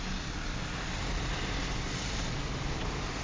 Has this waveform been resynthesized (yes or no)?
no